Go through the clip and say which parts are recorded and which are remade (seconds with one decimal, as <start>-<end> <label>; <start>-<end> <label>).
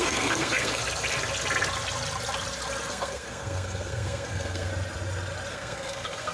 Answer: 0.0-0.8 remade; 0.8-2.9 recorded; 2.9-4.7 remade; 4.7-5.5 recorded; 5.5-6.3 remade